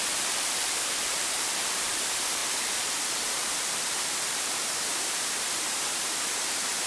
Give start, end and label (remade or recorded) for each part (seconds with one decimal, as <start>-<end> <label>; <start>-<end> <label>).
0.0-6.9 remade